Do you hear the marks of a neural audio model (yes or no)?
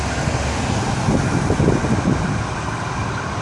no